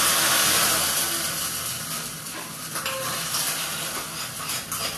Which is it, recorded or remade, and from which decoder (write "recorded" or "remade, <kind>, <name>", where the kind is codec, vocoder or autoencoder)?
recorded